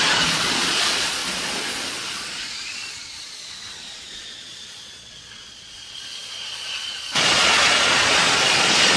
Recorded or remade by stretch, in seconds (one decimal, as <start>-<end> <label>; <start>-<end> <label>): 0.0-9.0 remade